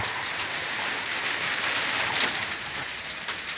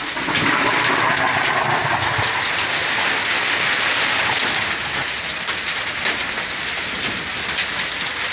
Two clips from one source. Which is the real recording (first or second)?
second